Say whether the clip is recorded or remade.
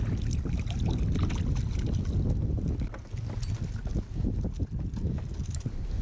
recorded